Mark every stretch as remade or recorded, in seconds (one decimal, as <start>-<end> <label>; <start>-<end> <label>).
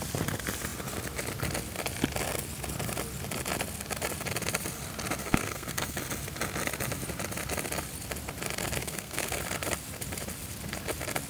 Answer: 0.0-5.2 recorded; 5.2-6.0 remade; 6.0-8.8 recorded; 8.8-9.4 remade; 9.4-11.3 recorded